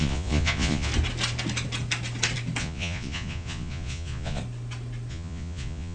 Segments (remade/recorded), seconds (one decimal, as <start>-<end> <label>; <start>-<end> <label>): 0.0-0.9 remade; 0.9-2.6 recorded; 2.6-4.4 remade; 4.4-5.1 recorded; 5.1-5.9 remade